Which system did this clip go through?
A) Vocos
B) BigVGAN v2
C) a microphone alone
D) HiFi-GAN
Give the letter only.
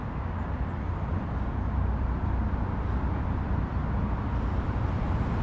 C